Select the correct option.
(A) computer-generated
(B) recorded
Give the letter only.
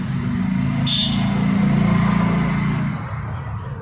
B